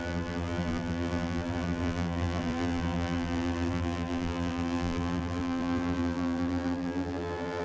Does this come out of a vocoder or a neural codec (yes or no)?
yes